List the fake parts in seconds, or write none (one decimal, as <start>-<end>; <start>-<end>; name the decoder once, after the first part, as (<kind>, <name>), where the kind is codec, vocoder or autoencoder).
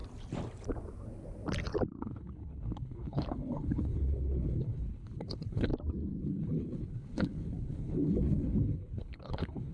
2.0-5.7 (codec, HILCodec); 6.2-9.7